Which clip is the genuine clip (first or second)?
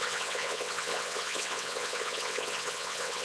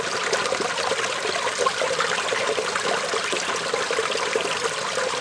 second